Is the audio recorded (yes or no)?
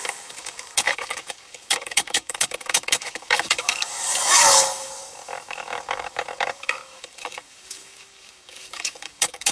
no